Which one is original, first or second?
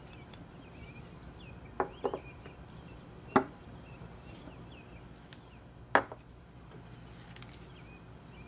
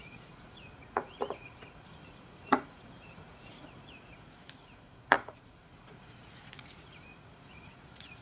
first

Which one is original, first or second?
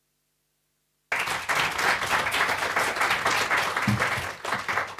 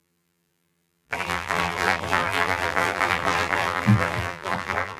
first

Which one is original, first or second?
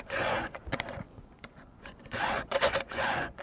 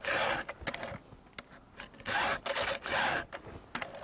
second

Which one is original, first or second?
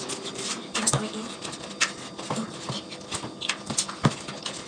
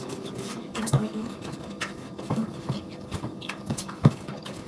first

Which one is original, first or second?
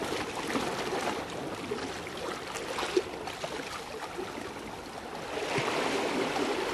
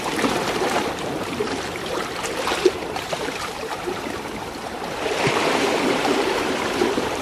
first